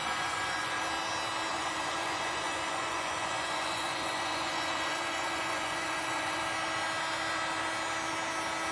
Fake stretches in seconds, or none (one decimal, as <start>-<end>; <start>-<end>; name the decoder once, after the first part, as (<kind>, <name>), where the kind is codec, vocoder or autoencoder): 0.0-0.8 (vocoder, Vocos); 1.5-6.4